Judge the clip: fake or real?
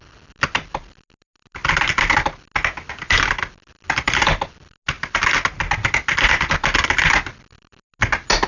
real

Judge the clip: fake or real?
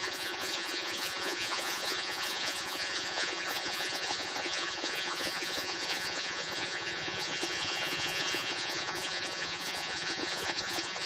fake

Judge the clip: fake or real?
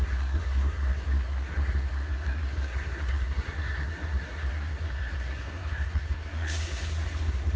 fake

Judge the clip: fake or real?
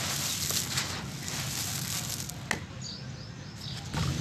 real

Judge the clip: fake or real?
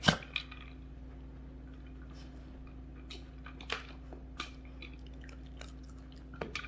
real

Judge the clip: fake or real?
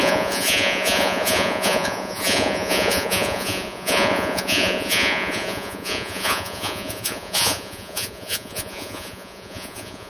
fake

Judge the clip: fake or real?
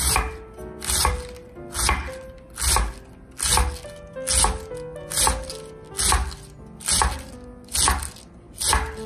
real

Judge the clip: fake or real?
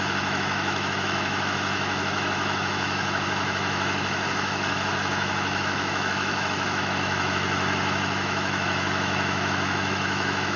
fake